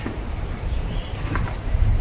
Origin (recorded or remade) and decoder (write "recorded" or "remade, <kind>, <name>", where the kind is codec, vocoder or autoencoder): recorded